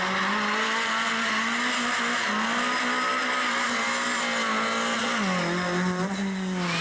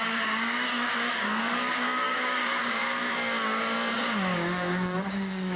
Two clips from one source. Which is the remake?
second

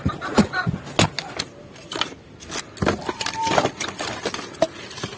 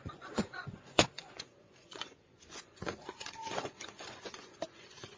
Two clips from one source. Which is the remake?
second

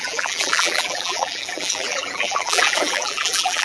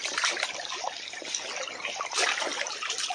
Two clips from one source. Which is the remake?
first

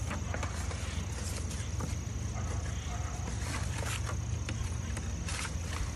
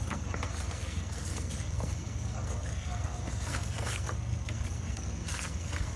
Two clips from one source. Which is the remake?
second